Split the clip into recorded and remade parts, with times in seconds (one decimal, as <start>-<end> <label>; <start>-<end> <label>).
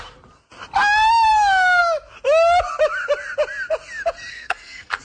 0.0-4.3 recorded; 4.3-5.0 remade